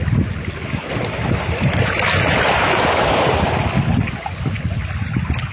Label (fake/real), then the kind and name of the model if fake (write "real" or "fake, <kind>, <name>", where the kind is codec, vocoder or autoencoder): real